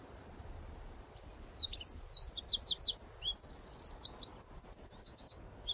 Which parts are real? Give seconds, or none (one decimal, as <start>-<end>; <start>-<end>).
0.0-5.0